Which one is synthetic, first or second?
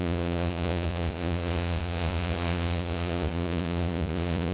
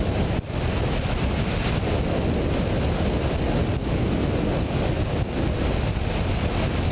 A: first